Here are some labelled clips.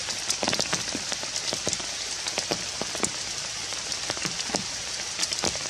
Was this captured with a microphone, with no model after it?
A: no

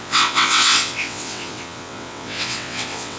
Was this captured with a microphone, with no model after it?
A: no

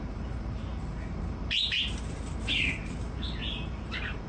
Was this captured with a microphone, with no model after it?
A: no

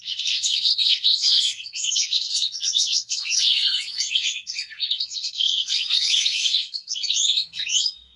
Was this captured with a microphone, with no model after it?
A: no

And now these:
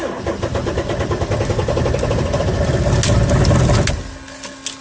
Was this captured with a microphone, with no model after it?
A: yes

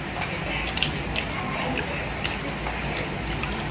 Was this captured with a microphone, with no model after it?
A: yes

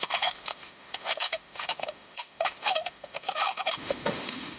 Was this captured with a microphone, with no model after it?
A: no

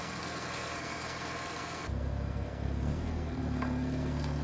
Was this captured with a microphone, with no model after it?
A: no